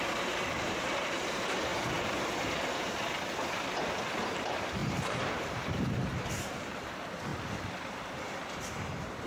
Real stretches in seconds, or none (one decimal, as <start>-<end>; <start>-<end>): 7.3-8.9